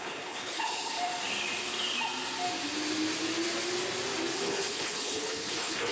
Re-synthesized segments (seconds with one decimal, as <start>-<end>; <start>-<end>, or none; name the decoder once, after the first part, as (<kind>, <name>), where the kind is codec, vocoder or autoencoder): 0.0-0.9 (codec, HILCodec); 4.4-5.9